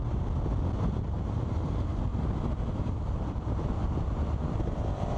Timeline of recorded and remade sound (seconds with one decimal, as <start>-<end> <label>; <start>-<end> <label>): 0.0-1.0 recorded; 1.0-2.1 remade; 2.1-2.7 recorded; 2.7-5.2 remade